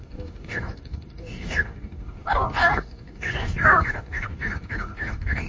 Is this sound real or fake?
fake